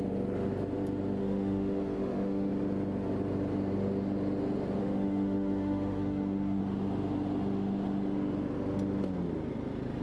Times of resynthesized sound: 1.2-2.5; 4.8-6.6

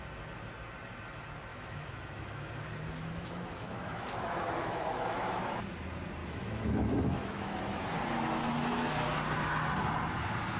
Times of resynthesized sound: 1.5-5.4; 6.2-7.8

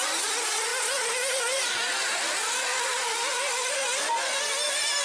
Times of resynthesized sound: none

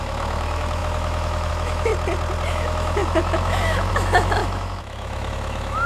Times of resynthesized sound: 0.0-1.9; 2.5-5.9

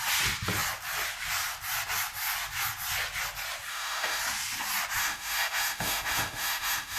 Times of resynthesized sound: 3.7-4.2; 5.0-7.0